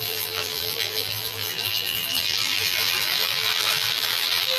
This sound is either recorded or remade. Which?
remade